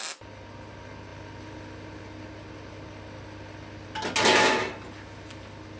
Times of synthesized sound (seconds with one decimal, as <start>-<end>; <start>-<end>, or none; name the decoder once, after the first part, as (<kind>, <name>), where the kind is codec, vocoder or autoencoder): none